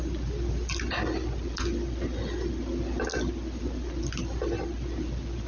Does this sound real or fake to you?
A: real